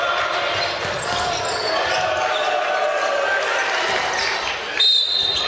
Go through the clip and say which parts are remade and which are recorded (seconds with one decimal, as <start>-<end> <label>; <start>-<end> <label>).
0.0-5.5 recorded